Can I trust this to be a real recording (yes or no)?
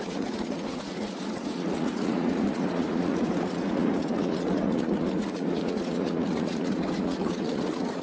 no